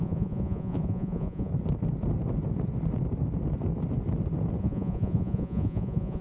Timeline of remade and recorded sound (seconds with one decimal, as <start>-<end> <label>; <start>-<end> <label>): 0.0-1.5 remade; 1.5-4.6 recorded; 4.6-6.2 remade

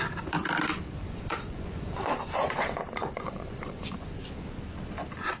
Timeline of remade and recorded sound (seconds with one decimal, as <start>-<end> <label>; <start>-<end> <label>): 0.0-1.0 recorded; 1.0-4.2 remade; 4.2-5.4 recorded